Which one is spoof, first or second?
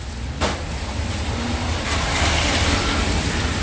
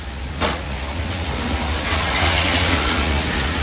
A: second